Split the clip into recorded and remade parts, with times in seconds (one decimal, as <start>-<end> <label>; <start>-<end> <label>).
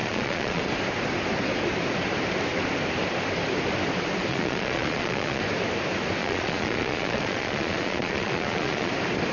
0.0-0.6 remade; 0.6-4.3 recorded; 4.3-5.4 remade; 5.4-6.2 recorded; 6.2-8.9 remade; 8.9-9.3 recorded